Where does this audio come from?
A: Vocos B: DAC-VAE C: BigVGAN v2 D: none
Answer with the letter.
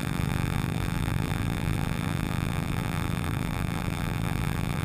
C